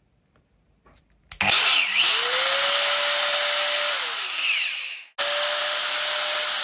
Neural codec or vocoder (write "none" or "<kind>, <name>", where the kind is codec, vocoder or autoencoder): none